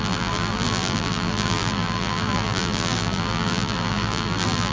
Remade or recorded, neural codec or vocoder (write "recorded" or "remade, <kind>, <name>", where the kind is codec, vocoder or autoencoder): remade, vocoder, BigVGAN v2